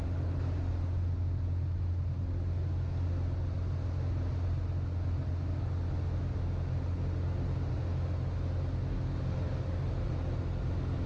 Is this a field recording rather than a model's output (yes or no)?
yes